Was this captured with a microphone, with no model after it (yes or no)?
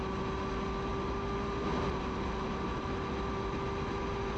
yes